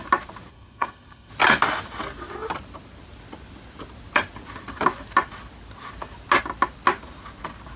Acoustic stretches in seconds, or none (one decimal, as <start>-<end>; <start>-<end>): 0.0-0.5; 1.3-7.8

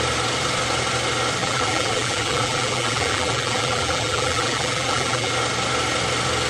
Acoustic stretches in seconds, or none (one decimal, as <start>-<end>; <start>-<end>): 0.0-1.4; 5.3-6.5

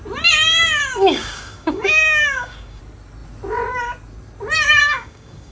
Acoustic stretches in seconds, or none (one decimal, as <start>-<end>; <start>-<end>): 0.0-0.8; 2.8-4.8